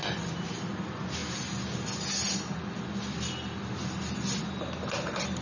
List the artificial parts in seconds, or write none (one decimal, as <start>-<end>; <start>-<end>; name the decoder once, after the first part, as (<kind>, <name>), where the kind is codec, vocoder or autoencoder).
none